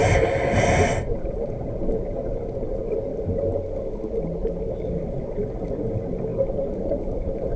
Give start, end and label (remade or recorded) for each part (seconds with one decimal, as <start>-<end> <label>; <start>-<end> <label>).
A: 0.0-2.8 remade; 2.8-6.3 recorded; 6.3-7.6 remade